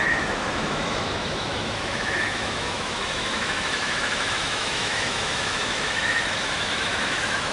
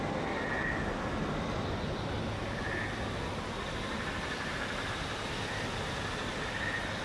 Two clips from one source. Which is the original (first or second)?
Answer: second